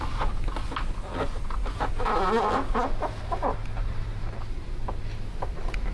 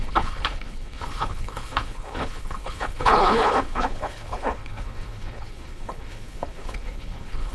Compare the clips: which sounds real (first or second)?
first